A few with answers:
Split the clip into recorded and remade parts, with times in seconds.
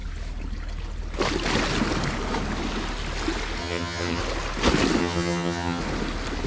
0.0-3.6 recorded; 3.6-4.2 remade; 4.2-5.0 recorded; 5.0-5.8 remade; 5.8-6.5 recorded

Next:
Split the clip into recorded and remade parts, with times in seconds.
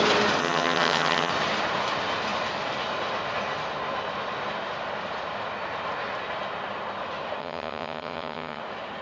0.0-0.4 recorded; 0.4-1.3 remade; 1.3-7.4 recorded; 7.4-8.6 remade; 8.6-9.0 recorded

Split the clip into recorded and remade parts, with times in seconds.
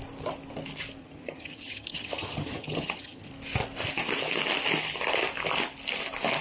0.0-1.0 recorded; 1.0-3.3 remade; 3.3-6.4 recorded